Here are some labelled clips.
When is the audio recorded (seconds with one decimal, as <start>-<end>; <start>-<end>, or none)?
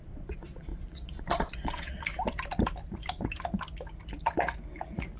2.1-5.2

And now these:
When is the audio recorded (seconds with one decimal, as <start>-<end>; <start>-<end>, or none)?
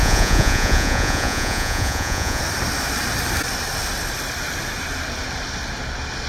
2.4-6.3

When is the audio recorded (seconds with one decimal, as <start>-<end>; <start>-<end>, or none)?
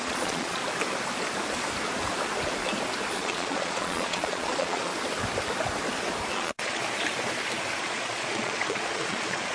0.6-3.1; 4.9-6.3; 6.8-7.8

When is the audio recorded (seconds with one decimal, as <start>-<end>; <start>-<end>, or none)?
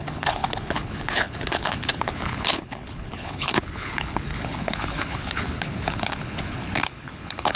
none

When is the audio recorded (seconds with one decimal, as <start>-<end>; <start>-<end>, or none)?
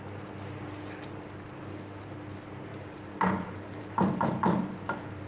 0.0-2.7